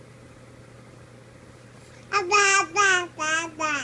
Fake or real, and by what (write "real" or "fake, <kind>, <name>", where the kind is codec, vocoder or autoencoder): real